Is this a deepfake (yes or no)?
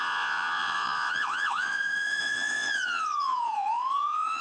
yes